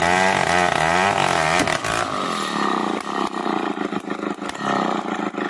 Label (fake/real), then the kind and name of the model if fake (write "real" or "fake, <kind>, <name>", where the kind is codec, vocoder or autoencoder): real